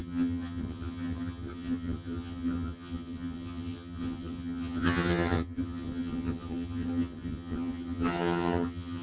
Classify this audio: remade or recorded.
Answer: remade